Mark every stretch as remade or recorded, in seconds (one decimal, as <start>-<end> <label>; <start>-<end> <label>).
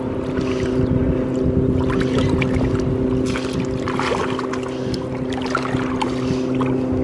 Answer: 0.0-7.0 recorded